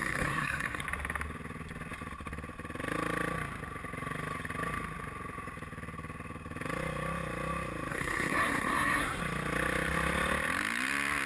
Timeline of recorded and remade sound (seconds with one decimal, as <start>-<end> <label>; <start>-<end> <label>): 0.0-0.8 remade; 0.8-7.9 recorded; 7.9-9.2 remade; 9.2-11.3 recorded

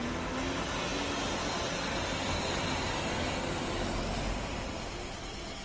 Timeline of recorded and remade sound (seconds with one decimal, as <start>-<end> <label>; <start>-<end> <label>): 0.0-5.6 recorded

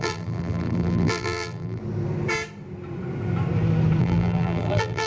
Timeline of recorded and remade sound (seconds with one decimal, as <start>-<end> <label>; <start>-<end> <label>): 0.0-1.8 remade; 1.8-4.0 recorded; 4.0-5.1 remade